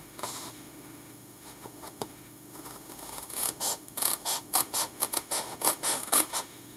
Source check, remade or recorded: remade